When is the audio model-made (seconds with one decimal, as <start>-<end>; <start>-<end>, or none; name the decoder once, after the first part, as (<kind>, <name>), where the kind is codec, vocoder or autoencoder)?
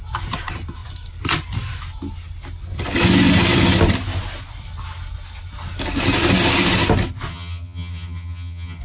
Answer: 7.3-8.8 (vocoder, HiFi-GAN)